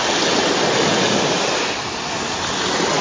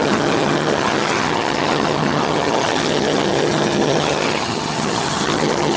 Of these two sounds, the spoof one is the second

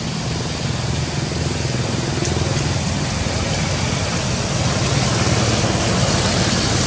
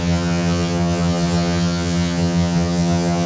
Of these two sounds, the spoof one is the second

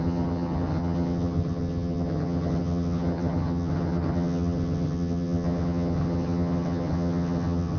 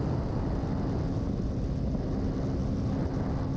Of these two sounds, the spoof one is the first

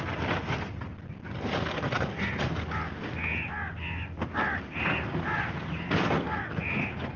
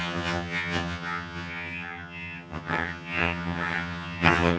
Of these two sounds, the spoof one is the second